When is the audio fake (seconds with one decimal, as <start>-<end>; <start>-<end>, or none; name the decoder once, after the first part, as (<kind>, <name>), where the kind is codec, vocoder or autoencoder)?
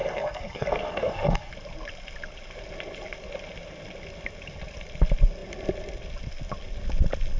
0.0-1.5 (codec, SNAC)